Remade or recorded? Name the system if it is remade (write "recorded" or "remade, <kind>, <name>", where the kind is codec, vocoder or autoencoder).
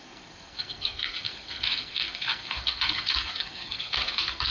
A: remade, codec, SNAC